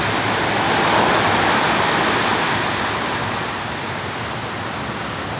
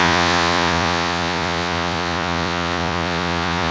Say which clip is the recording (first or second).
first